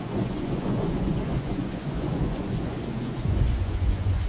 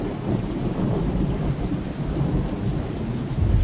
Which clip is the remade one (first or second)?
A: first